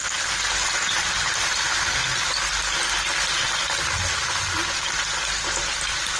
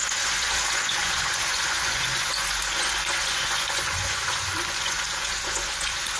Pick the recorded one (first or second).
first